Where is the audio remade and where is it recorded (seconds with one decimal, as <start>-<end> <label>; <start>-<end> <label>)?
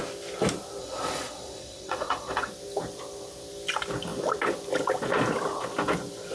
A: 0.0-0.8 recorded; 0.8-2.5 remade; 2.5-6.3 recorded